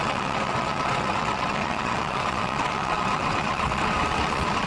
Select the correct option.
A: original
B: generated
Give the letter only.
B